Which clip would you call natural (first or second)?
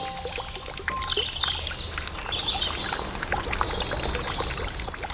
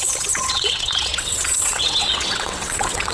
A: first